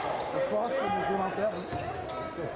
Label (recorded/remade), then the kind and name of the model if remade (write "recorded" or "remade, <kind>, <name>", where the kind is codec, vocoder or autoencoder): recorded